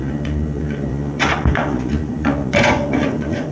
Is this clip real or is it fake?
fake